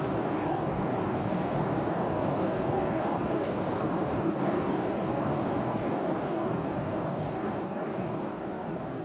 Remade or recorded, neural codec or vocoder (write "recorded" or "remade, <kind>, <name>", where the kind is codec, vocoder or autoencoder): remade, codec, DAC